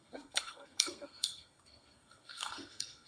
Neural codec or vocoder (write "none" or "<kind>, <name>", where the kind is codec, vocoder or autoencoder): codec, SNAC